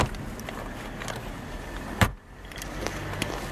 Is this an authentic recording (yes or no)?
yes